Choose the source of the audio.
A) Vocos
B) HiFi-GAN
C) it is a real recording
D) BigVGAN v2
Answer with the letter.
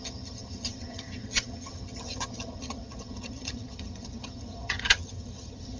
B